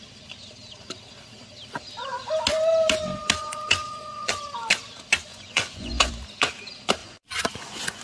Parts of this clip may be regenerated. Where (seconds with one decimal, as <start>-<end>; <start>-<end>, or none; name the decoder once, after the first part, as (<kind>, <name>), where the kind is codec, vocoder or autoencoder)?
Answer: 3.4-4.4 (vocoder, Vocos); 5.3-6.1; 7.0-8.0